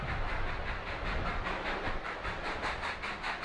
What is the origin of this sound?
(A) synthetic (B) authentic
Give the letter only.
B